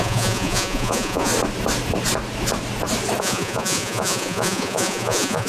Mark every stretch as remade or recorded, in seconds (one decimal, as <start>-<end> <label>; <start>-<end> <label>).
0.0-1.3 remade; 1.3-3.2 recorded; 3.2-5.5 remade